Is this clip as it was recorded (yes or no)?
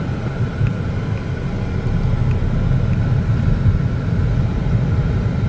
yes